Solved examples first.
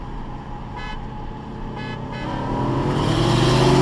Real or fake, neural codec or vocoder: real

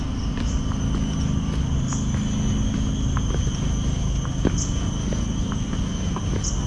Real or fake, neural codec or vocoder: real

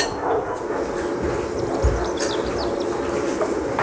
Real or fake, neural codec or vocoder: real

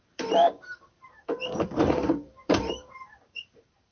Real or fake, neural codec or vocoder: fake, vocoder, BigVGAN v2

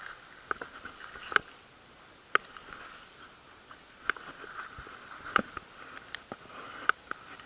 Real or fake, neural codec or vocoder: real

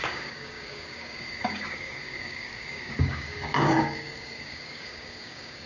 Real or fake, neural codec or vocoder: fake, codec, DAC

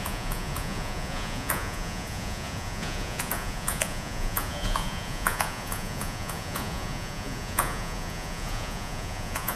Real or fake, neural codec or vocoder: fake, vocoder, Vocos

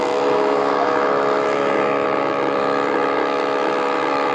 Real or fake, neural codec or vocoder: fake, autoencoder, DAC-VAE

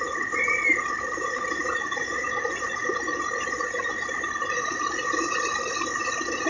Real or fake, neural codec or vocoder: real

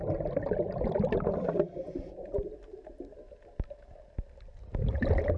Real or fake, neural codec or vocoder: fake, vocoder, BigVGAN v2